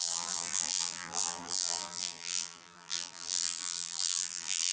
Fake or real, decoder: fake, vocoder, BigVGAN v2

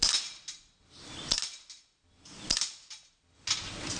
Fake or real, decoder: real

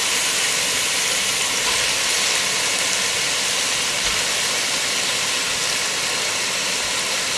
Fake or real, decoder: real